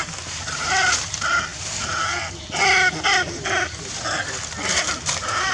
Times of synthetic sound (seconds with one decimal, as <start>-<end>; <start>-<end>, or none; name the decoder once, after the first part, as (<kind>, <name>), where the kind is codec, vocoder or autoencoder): none

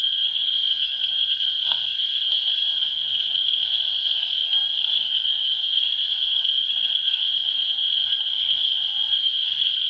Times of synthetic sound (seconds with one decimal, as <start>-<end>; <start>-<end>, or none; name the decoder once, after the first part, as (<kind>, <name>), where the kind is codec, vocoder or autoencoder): 0.0-9.9 (codec, SNAC)

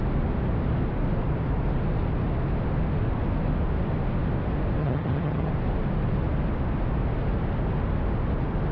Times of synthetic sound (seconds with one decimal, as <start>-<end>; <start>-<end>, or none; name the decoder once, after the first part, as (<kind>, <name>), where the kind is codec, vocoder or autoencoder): 4.8-5.5 (vocoder, HiFi-GAN)

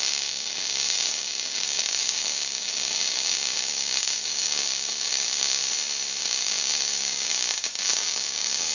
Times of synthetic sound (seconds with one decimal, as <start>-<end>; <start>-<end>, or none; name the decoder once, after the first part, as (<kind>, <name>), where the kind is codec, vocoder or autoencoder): 0.0-5.6 (codec, DAC); 6.2-8.7

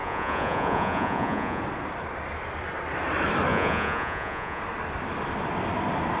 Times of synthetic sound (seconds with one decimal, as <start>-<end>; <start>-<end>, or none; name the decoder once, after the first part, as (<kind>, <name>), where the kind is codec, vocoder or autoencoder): 0.0-1.6 (vocoder, Vocos); 3.5-4.6

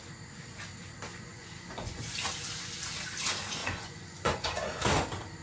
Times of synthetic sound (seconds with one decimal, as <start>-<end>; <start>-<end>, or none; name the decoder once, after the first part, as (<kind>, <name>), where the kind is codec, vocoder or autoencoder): 1.1-2.0 (vocoder, Vocos); 3.6-4.8

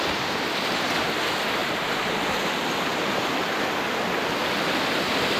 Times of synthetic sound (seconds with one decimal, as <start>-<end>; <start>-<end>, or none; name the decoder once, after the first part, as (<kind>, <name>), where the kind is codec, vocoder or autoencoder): none